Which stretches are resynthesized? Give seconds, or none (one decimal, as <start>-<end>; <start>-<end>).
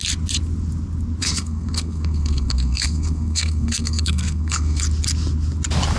1.2-4.8